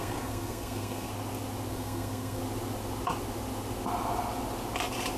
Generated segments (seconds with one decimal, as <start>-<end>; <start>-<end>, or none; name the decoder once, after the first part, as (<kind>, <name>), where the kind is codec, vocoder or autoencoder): 0.0-1.1 (codec, SNAC); 1.7-2.4